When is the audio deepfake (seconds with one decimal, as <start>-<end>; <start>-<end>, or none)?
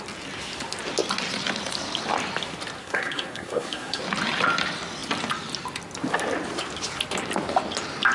2.8-4.0